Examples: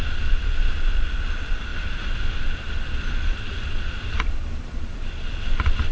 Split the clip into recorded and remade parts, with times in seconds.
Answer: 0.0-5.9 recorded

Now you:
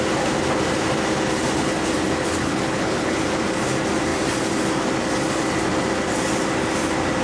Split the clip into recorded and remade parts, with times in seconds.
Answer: 0.0-2.2 recorded; 2.2-3.2 remade; 3.2-7.2 recorded

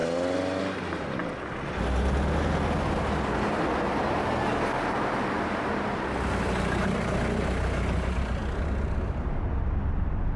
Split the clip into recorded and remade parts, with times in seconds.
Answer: 0.0-10.4 recorded

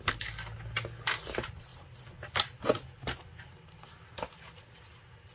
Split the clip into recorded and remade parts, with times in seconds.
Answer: 0.0-5.3 recorded

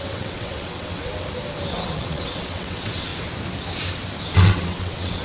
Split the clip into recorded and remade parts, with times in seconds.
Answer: 0.0-1.1 remade; 1.1-1.7 recorded; 1.7-3.1 remade; 3.1-4.3 recorded; 4.3-5.2 remade

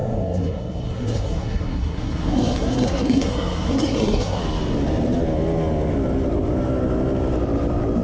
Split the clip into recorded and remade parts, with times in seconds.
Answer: 0.0-4.4 remade; 4.4-8.0 recorded

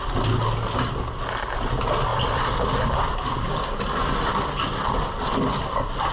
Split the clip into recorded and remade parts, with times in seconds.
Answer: 0.0-6.1 recorded